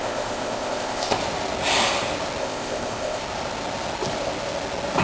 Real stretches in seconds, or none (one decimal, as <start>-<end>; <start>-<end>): 1.2-2.4; 3.2-5.0